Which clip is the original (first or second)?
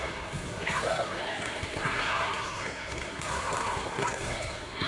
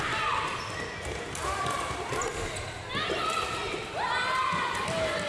second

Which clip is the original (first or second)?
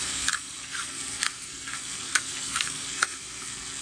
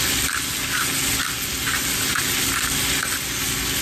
second